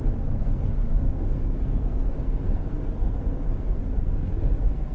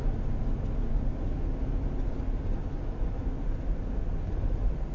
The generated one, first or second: first